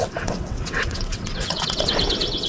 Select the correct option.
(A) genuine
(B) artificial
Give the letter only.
B